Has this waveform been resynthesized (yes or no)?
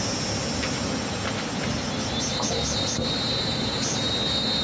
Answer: no